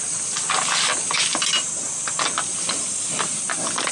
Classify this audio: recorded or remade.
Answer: recorded